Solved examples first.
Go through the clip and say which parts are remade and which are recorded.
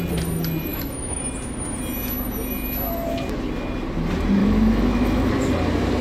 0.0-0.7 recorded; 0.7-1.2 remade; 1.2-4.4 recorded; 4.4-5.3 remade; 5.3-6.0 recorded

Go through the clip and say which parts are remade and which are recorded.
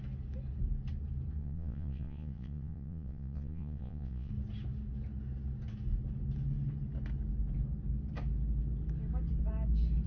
0.0-1.4 recorded; 1.4-4.3 remade; 4.3-10.1 recorded